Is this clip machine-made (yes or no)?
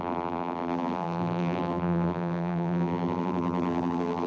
yes